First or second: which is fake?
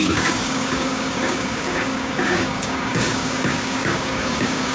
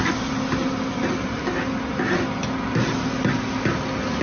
first